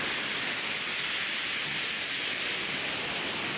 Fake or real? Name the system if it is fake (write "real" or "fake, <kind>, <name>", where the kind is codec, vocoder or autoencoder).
real